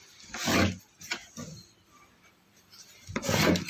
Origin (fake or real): real